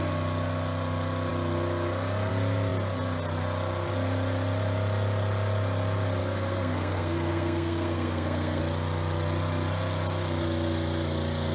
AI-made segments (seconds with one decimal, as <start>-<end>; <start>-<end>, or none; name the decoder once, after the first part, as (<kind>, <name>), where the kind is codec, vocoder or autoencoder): 6.2-8.6 (codec, SNAC)